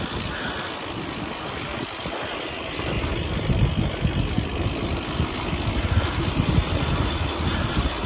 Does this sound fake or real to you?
real